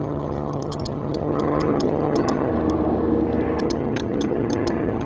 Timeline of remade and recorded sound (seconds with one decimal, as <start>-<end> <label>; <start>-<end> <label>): 0.0-2.5 remade; 2.5-3.6 recorded; 3.6-5.0 remade